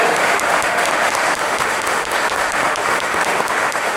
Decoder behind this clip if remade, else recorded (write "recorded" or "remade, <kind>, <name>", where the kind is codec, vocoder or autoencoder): remade, autoencoder, DAC-VAE